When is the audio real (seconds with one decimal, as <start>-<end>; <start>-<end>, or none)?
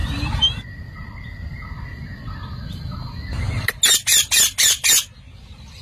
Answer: 0.0-5.8